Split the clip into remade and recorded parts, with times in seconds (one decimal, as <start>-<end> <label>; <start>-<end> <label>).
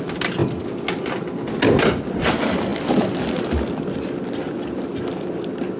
0.0-5.8 recorded